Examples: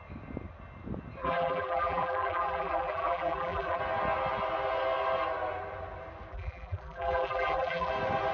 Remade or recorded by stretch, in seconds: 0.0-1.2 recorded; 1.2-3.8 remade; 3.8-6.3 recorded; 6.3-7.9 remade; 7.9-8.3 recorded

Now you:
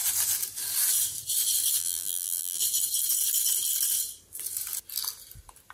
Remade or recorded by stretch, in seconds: 0.0-1.8 recorded; 1.8-2.6 remade; 2.6-5.7 recorded

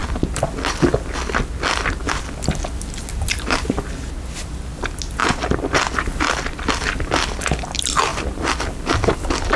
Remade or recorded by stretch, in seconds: 0.0-5.2 recorded; 5.2-6.8 remade; 6.8-8.1 recorded; 8.1-9.1 remade; 9.1-9.6 recorded

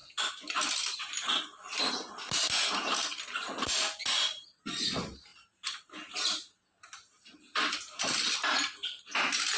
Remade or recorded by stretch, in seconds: 0.0-5.3 recorded; 5.3-6.6 remade; 6.6-9.6 recorded

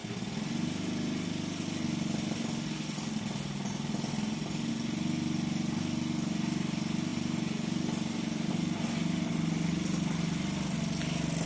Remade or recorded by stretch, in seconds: 0.0-7.1 recorded; 7.1-8.5 remade; 8.5-11.5 recorded

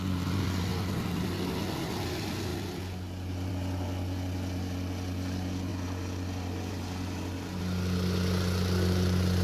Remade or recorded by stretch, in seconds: 0.0-5.7 recorded; 5.7-7.6 remade; 7.6-9.4 recorded

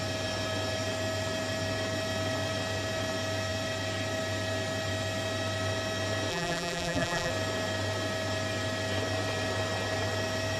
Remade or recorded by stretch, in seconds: 0.0-6.3 recorded; 6.3-7.3 remade; 7.3-10.6 recorded

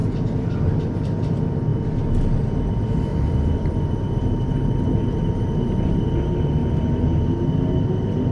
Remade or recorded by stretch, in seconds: 0.0-3.1 recorded; 3.1-6.0 remade; 6.0-6.6 recorded; 6.6-7.2 remade; 7.2-8.3 recorded